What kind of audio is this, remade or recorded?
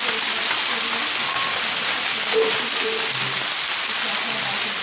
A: recorded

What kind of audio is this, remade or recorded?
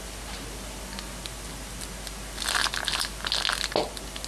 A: recorded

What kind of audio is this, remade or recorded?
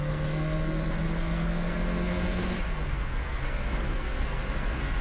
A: remade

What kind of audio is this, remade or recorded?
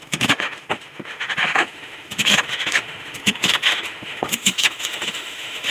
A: remade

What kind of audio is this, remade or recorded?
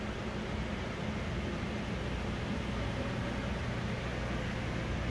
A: recorded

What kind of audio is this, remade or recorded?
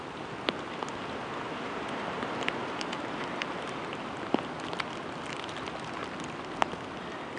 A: recorded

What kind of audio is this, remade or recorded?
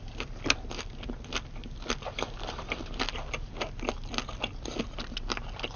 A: recorded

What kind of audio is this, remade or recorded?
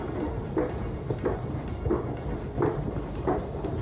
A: recorded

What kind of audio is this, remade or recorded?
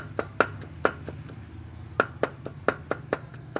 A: recorded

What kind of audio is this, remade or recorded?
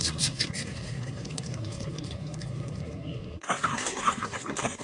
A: remade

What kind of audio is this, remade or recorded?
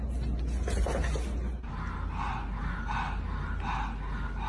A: recorded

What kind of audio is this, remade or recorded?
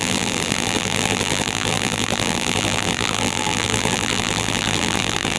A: remade